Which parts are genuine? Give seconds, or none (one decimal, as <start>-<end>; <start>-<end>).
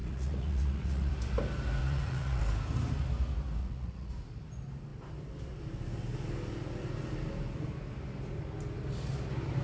1.1-1.8; 2.4-3.6; 4.1-9.6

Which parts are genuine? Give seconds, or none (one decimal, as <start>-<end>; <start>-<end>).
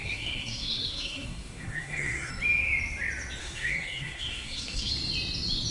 2.3-3.4; 4.9-5.7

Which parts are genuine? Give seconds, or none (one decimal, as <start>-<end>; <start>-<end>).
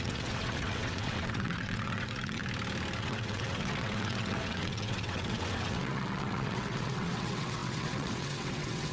2.4-3.0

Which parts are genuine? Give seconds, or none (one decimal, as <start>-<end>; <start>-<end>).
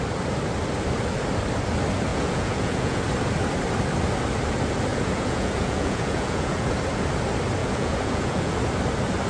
0.0-2.1; 3.0-4.9; 6.7-7.6; 8.6-9.3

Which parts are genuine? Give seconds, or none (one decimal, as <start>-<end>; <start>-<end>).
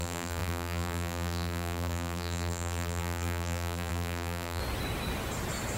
4.6-5.8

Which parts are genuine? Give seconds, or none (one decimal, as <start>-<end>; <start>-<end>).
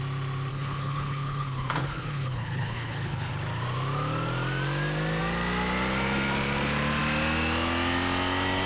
0.0-0.5; 3.3-8.7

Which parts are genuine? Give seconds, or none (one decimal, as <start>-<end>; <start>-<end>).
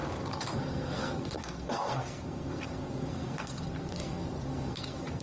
none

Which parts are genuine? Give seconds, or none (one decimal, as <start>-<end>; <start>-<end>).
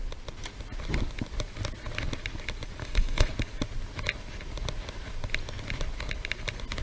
0.0-2.8; 3.3-6.8